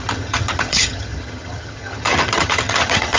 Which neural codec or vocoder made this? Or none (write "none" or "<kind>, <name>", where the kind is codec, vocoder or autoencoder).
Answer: vocoder, HiFi-GAN